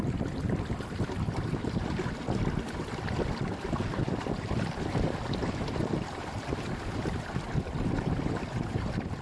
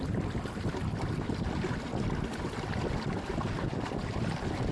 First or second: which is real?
second